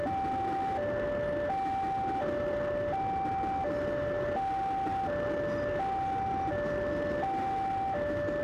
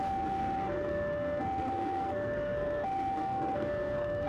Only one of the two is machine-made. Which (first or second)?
second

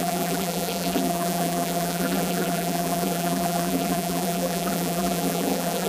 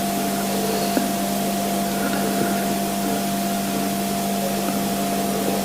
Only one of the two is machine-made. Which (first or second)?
first